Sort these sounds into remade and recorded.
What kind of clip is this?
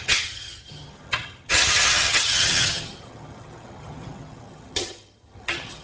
remade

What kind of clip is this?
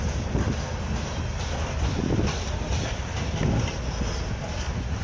recorded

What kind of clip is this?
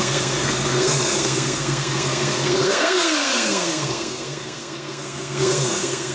remade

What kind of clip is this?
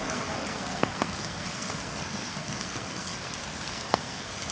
remade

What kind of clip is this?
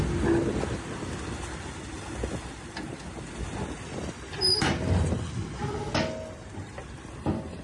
recorded